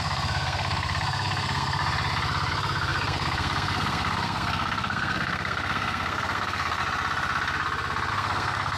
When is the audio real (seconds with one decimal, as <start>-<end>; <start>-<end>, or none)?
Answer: 1.8-2.5; 6.8-8.1